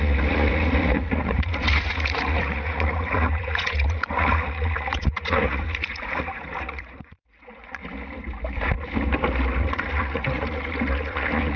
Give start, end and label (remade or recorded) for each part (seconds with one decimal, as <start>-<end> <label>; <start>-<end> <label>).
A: 0.0-7.8 remade; 7.8-9.6 recorded; 9.6-11.6 remade